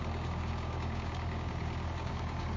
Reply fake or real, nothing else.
fake